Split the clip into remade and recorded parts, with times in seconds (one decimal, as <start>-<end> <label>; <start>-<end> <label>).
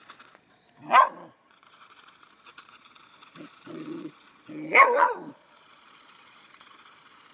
0.0-7.3 remade